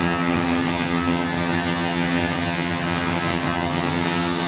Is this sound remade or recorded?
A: remade